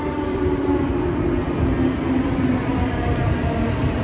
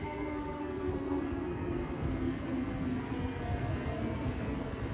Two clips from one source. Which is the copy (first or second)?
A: second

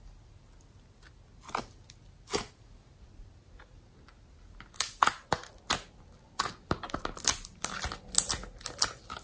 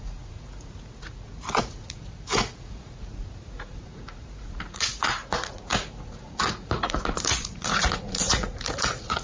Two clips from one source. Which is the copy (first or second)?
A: second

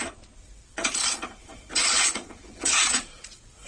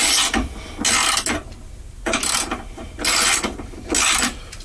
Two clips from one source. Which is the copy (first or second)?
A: first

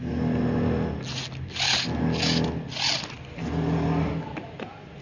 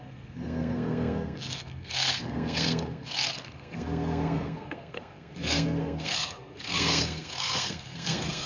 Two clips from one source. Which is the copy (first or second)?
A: second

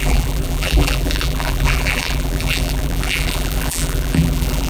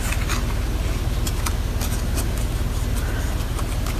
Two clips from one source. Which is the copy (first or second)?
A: first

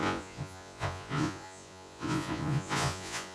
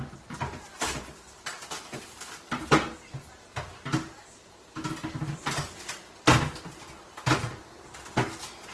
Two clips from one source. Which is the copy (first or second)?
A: first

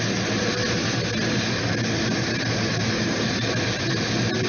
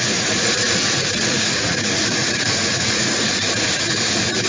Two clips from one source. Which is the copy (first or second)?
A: second